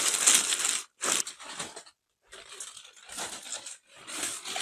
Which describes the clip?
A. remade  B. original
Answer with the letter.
B